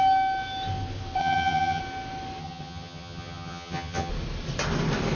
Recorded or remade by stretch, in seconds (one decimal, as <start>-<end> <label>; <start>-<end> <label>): 0.0-1.2 recorded; 1.2-1.8 remade; 1.8-2.4 recorded; 2.4-4.1 remade; 4.1-5.2 recorded